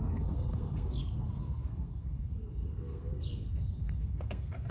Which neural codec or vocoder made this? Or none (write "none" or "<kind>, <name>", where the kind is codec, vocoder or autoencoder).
codec, SNAC